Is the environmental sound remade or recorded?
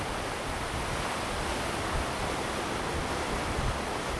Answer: recorded